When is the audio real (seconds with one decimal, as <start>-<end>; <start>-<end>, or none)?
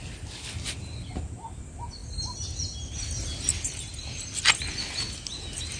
0.0-5.8